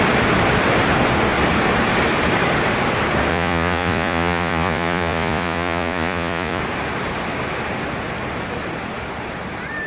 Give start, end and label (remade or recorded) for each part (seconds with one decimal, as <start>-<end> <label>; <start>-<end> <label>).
0.0-3.3 recorded; 3.3-6.6 remade; 6.6-9.9 recorded